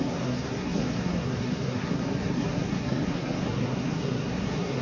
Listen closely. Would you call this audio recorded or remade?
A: remade